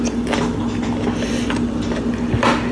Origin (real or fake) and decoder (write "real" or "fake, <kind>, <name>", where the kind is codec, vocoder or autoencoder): real